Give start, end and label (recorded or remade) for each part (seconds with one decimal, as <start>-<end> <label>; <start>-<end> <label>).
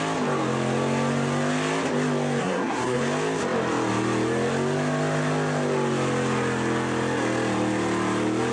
0.0-2.4 recorded; 2.4-3.0 remade; 3.0-8.5 recorded